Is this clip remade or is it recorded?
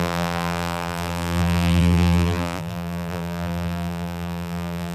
remade